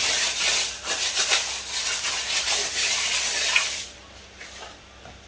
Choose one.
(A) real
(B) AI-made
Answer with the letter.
B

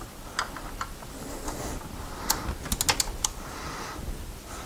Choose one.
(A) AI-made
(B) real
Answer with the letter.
B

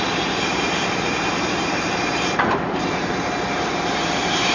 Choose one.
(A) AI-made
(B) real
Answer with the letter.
A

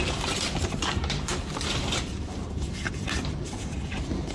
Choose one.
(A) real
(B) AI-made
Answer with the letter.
B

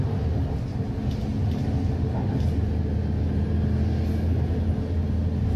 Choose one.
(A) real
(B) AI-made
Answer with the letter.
A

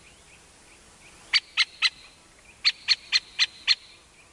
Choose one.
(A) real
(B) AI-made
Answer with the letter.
A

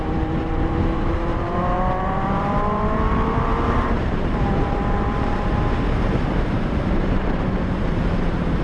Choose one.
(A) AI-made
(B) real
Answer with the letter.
A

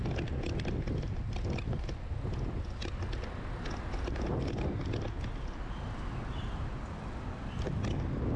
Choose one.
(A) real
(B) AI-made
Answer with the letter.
A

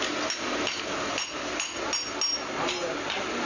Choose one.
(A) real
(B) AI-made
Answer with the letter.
A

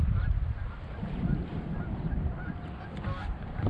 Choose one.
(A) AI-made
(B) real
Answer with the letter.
A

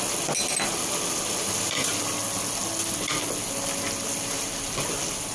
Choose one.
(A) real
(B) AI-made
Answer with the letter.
A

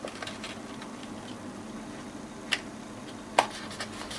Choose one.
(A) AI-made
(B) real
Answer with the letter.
B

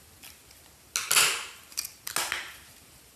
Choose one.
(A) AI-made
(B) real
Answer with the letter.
B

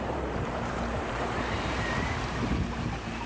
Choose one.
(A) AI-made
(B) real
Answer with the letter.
A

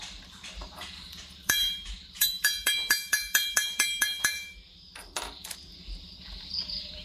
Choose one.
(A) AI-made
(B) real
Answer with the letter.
A